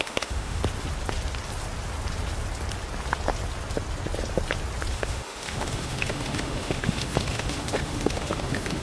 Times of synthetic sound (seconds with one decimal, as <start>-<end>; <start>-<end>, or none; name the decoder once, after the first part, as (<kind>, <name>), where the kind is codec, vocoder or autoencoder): 0.0-0.6 (autoencoder, DAC-VAE); 4.9-8.8